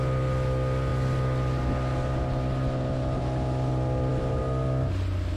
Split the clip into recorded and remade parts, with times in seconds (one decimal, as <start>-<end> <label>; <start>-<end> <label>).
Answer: 0.0-5.4 recorded